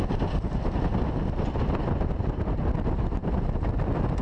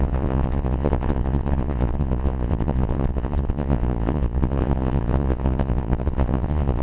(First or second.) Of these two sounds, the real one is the first